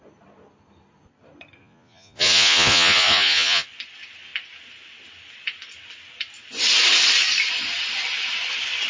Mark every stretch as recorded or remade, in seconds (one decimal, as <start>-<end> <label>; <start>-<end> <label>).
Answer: 0.0-1.6 recorded; 1.6-3.7 remade; 3.7-8.9 recorded